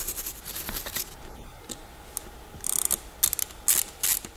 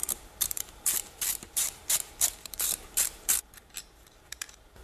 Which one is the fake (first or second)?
second